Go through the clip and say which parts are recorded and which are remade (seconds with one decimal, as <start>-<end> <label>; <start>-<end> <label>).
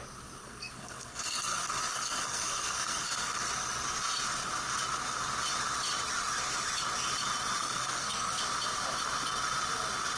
0.0-0.4 recorded; 0.4-3.5 remade; 3.5-7.6 recorded; 7.6-8.4 remade; 8.4-10.2 recorded